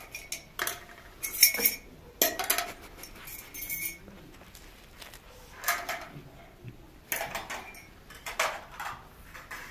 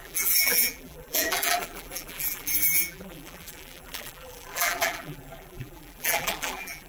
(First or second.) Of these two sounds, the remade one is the second